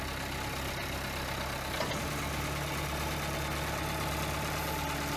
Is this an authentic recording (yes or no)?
yes